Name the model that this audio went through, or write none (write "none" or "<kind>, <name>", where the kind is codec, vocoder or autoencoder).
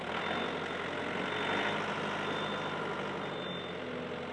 none